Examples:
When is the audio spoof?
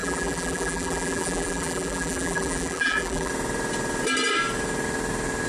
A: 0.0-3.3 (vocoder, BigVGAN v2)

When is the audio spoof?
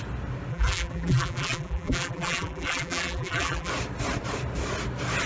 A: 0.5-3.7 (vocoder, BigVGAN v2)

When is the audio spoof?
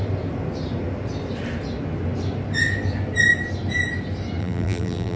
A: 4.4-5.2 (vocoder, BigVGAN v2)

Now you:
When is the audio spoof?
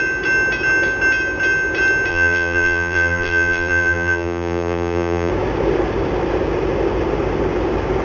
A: 2.1-5.3 (vocoder, BigVGAN v2)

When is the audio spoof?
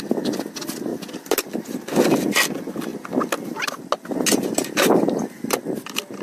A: 0.0-0.9 (vocoder, BigVGAN v2); 1.6-2.9; 5.2-6.2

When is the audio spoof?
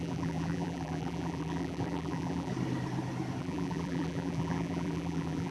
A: 0.0-2.5 (vocoder, BigVGAN v2); 3.4-5.5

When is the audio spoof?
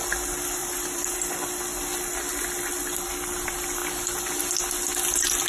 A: 0.6-1.3 (vocoder, BigVGAN v2)